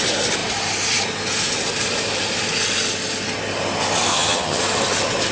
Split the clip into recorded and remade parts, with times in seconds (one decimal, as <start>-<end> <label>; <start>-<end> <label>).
0.0-4.1 recorded; 4.1-4.6 remade; 4.6-5.3 recorded